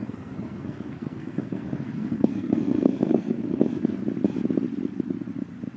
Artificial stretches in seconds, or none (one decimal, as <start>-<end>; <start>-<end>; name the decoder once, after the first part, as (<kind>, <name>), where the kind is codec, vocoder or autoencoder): 0.0-4.0 (codec, SNAC)